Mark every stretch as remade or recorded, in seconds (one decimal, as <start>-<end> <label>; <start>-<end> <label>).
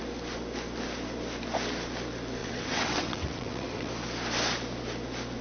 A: 0.0-2.4 recorded; 2.4-3.9 remade; 3.9-5.4 recorded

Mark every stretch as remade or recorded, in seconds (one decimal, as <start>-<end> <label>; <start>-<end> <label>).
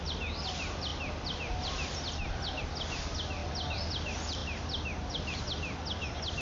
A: 0.0-6.4 recorded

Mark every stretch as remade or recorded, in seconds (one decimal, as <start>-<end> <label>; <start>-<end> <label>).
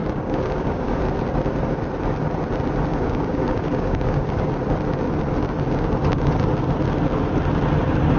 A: 0.0-1.0 remade; 1.0-2.9 recorded; 2.9-4.5 remade; 4.5-8.2 recorded